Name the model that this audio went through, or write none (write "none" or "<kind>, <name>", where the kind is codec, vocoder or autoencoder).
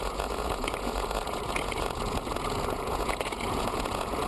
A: vocoder, Vocos